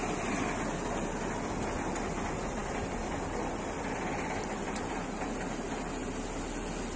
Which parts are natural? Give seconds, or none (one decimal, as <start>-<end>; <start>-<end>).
0.0-2.6; 5.4-7.0